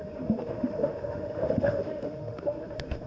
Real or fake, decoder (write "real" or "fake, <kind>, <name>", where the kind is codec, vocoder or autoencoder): fake, autoencoder, DAC-VAE